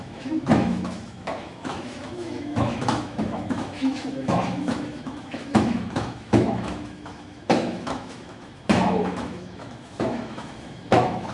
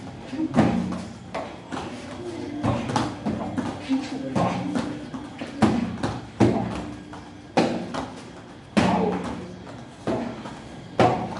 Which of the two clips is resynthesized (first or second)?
first